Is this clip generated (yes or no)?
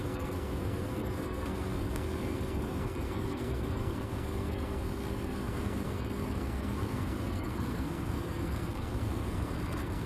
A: yes